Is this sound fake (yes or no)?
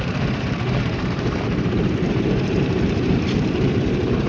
yes